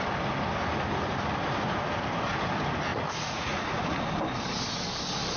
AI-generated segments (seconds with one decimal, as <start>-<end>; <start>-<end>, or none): 2.9-4.0